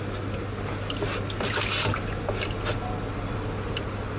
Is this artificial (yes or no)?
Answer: no